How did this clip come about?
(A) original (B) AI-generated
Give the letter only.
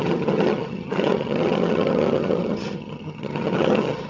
B